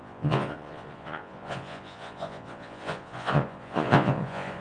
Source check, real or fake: fake